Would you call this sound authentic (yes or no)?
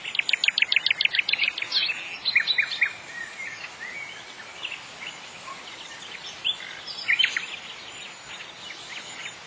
yes